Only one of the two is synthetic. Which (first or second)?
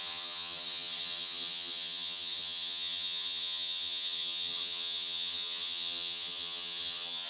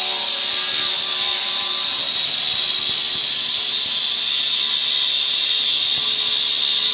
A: first